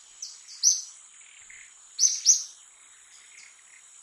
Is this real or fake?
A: real